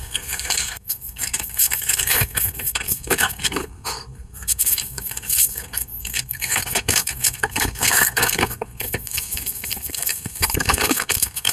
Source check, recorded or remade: remade